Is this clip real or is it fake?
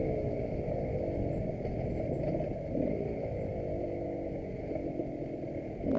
real